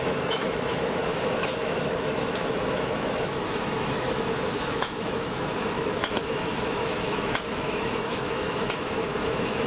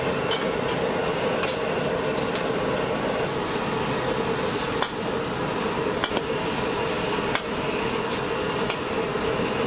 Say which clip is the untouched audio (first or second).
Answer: second